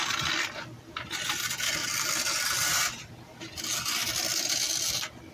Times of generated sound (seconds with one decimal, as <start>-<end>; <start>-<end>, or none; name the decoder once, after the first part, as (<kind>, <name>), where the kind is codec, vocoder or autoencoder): 1.8-3.6 (vocoder, BigVGAN v2)